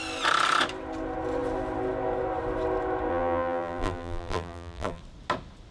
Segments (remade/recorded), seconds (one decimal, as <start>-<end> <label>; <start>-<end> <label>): 0.0-3.1 recorded; 3.1-5.0 remade; 5.0-5.7 recorded